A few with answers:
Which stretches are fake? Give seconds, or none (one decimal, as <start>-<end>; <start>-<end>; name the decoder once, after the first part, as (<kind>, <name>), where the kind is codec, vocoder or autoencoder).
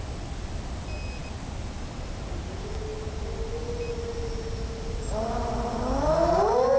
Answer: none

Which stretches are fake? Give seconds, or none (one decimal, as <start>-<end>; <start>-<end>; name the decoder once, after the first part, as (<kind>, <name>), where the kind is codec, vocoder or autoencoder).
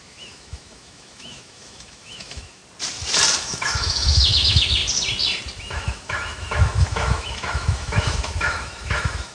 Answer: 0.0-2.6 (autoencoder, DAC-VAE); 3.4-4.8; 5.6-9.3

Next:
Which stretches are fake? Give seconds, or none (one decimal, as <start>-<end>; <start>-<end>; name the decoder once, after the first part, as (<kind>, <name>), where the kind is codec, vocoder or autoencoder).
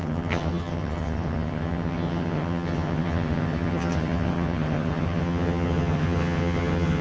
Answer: 0.0-7.0 (vocoder, HiFi-GAN)